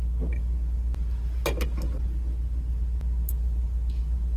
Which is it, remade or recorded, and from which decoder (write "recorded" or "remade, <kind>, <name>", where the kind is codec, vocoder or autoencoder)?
recorded